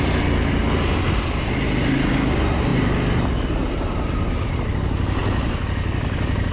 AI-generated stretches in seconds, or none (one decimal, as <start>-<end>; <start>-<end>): none